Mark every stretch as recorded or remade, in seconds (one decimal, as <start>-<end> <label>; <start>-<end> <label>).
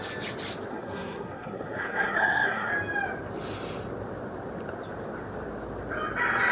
0.0-0.7 recorded; 0.7-2.7 remade; 2.7-6.5 recorded